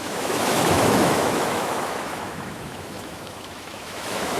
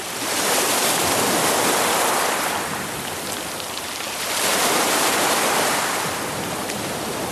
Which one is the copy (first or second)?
first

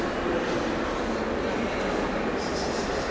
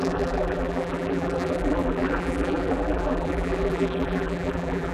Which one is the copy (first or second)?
second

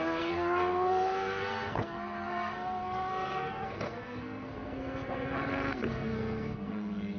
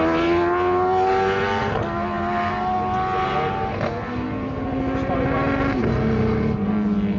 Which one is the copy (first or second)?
first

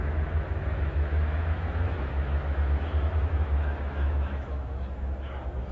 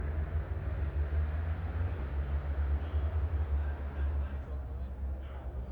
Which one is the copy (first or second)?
first